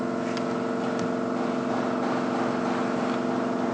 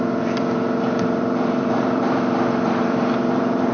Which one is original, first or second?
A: first